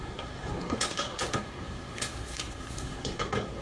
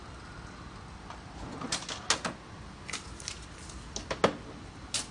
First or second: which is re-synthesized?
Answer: first